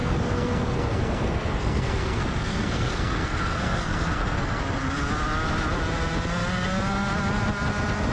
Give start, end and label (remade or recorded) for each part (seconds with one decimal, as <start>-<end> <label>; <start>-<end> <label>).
0.0-4.6 remade; 4.6-8.1 recorded